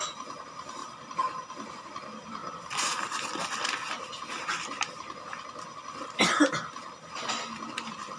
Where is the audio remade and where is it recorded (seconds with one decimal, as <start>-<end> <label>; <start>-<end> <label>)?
0.0-8.2 recorded